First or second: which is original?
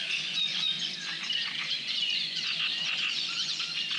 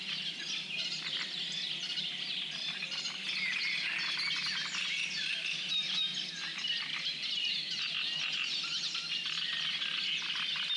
second